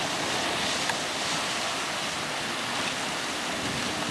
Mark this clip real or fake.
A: real